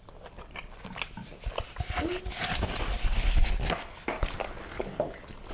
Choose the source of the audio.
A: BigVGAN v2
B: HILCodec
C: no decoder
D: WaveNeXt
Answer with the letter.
C